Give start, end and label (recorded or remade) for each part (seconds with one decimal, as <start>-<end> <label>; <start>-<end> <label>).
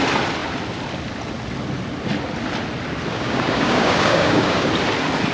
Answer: 0.0-3.1 recorded; 3.1-4.7 remade; 4.7-5.3 recorded